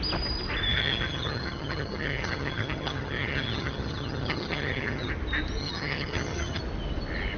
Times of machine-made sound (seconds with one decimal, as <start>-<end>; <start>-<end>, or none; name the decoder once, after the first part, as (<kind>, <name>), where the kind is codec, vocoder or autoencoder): 0.7-5.1 (vocoder, HiFi-GAN); 5.6-6.6